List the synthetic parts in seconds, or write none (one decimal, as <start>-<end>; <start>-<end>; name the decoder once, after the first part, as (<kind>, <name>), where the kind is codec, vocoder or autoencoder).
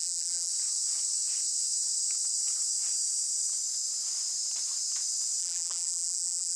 0.0-0.5 (vocoder, BigVGAN v2); 5.4-6.6